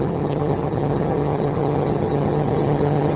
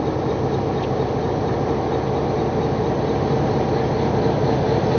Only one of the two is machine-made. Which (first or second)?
first